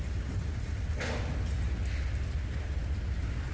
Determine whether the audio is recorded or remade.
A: recorded